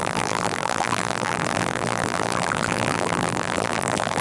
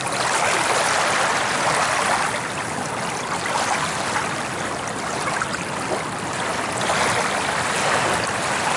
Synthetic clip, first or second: first